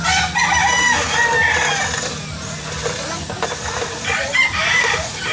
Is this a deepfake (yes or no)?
no